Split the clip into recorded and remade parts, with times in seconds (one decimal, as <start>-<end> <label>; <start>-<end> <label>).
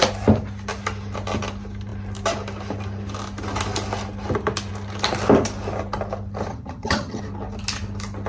0.0-6.5 recorded; 6.5-7.2 remade; 7.2-8.3 recorded